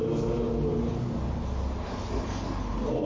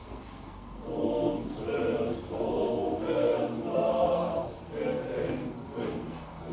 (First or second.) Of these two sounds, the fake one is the second